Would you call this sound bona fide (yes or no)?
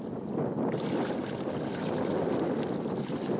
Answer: yes